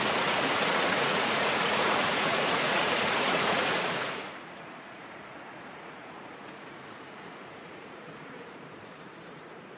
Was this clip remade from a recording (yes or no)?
yes